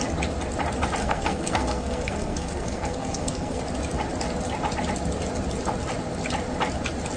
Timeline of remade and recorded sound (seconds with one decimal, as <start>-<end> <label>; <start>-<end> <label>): 0.0-1.0 recorded; 1.0-3.6 remade; 3.6-7.2 recorded